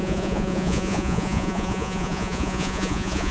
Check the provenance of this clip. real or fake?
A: fake